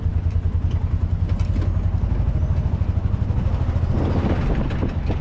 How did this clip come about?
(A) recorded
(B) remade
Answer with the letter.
A